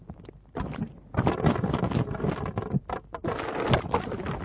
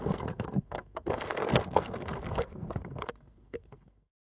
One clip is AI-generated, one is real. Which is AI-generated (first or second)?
second